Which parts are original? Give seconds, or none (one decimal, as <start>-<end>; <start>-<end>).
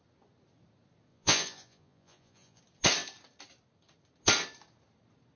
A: 0.0-1.1; 2.6-5.4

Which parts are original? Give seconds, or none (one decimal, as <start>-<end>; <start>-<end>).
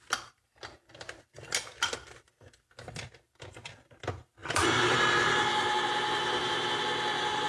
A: 0.0-4.4; 6.8-7.5